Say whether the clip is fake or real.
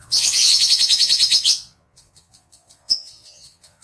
fake